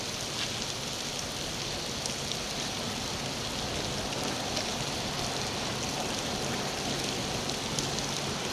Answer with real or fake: real